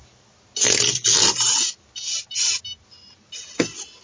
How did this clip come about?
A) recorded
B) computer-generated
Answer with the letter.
A